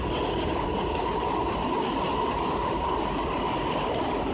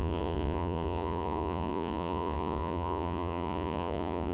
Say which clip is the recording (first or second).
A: first